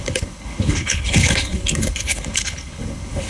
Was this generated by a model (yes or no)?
yes